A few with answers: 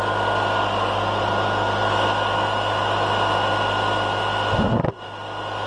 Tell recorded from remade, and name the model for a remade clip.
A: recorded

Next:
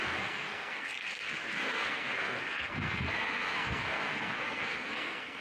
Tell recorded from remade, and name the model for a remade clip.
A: remade, codec, SNAC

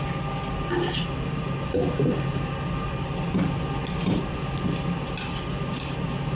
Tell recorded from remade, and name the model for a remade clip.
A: recorded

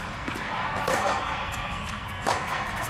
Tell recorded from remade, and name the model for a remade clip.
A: remade, codec, SNAC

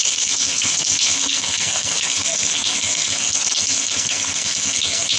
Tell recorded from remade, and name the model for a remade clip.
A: remade, codec, SNAC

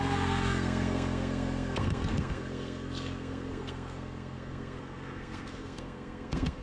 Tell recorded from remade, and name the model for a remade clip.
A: remade, codec, SNAC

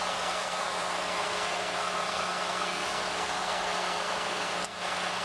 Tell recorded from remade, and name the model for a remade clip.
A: remade, codec, SNAC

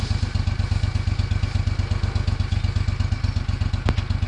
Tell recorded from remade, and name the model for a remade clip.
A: recorded